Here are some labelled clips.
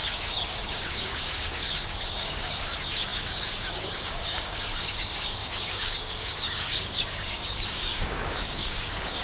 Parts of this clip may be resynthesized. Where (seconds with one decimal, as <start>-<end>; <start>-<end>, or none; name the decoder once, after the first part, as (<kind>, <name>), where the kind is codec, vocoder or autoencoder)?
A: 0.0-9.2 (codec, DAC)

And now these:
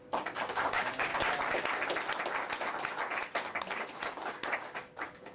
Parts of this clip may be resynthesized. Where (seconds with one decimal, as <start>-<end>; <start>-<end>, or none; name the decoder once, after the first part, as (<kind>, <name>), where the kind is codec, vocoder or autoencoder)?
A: 0.0-1.1 (codec, DAC); 3.5-5.3

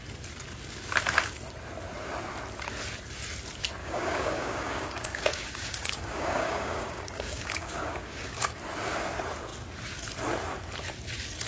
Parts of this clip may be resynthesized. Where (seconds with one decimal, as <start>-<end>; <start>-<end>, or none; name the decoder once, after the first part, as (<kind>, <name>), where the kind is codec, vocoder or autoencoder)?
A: 3.8-8.6 (codec, DAC)

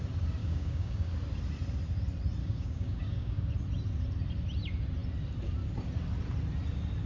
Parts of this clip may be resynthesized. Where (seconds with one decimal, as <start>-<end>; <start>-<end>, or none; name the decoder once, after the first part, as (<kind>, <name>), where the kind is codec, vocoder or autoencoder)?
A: 0.4-1.1 (codec, DAC); 2.4-3.5

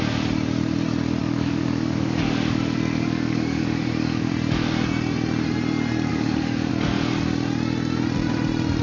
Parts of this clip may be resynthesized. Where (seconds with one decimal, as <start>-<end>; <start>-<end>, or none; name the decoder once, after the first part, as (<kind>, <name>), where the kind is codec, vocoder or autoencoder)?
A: 1.2-4.3 (codec, DAC); 6.1-6.7

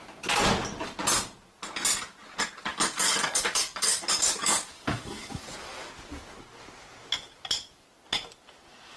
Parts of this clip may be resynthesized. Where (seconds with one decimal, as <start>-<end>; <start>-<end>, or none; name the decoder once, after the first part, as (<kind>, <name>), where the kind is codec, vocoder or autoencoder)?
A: 2.7-5.9 (codec, DAC)